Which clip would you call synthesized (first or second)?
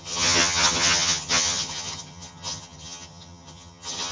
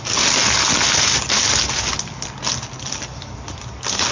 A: first